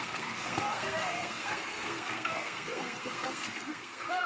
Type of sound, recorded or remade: remade